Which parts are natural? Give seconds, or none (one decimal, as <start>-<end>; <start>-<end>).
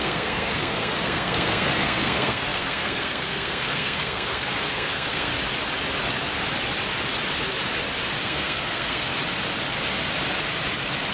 5.3-8.2; 9.1-11.1